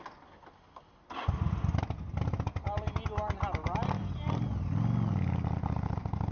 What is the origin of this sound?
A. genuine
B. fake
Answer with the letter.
A